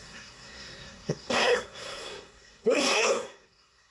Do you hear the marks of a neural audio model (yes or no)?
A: yes